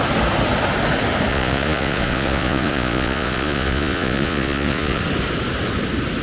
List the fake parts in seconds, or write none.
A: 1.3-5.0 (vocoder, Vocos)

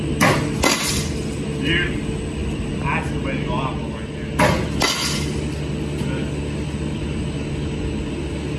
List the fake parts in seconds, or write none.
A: none

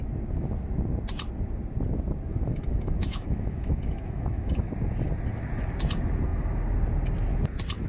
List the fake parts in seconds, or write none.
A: 2.3-4.7 (autoencoder, DAC-VAE)

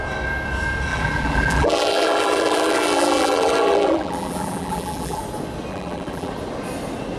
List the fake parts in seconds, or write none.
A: 0.9-5.2 (vocoder, BigVGAN v2); 5.7-6.3

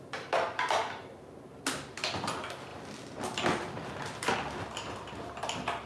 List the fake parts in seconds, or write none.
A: none

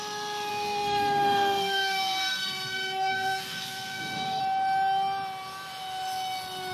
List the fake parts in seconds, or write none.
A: 0.5-4.4 (codec, SNAC)